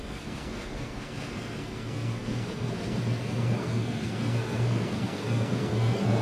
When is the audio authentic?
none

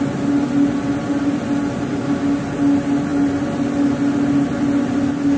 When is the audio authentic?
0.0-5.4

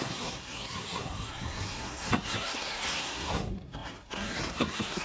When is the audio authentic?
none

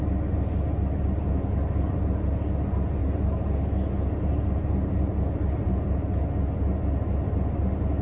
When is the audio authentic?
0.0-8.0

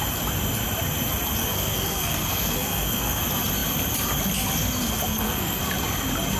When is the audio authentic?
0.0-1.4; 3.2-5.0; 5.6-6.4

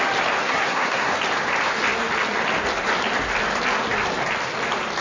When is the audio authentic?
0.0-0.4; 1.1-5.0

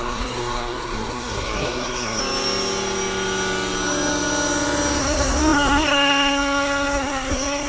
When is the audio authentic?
2.2-5.0